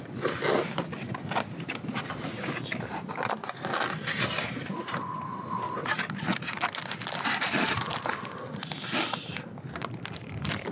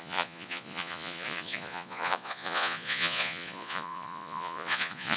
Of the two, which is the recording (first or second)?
first